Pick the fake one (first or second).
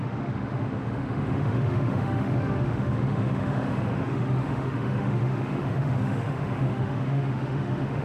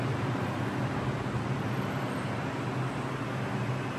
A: first